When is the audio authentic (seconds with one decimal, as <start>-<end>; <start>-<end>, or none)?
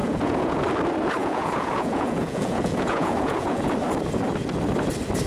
0.6-1.2; 3.7-5.3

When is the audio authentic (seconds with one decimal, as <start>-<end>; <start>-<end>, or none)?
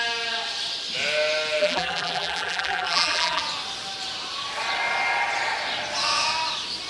0.0-1.6; 3.4-6.9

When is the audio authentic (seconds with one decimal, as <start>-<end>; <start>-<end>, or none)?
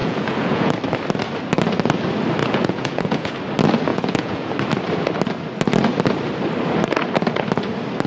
0.7-2.4; 3.3-3.9; 4.5-8.1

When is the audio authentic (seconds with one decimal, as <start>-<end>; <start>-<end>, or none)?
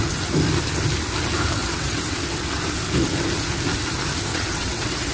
0.0-1.6; 2.2-4.3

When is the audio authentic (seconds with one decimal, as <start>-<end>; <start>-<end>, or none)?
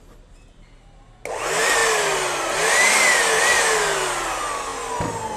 0.0-5.4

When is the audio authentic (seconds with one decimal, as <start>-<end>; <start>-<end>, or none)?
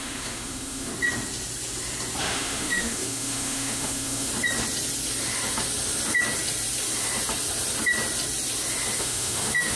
0.9-2.2; 4.3-9.0